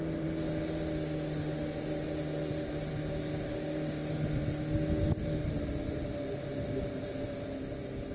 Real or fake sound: real